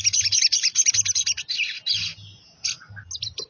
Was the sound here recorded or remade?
recorded